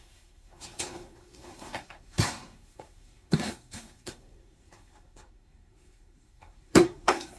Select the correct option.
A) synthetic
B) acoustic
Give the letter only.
A